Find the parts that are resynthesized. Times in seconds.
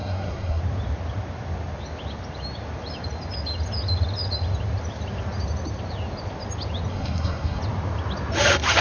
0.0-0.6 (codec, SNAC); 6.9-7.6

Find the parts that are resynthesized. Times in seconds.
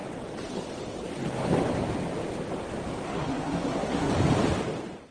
3.0-4.1 (codec, SNAC)